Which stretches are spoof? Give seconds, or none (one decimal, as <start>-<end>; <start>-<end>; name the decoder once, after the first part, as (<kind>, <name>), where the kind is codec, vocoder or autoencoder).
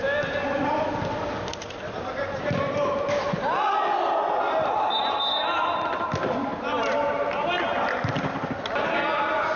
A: none